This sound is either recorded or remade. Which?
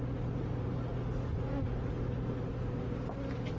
recorded